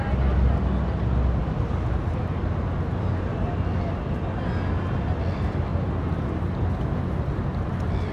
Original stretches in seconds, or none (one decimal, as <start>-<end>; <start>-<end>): 0.0-8.1